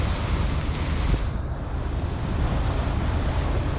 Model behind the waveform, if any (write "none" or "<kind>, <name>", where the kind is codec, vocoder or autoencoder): none